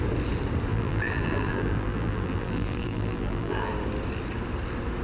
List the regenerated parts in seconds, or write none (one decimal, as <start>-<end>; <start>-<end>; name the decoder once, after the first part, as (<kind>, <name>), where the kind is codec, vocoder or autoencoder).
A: 0.7-3.7 (vocoder, BigVGAN v2)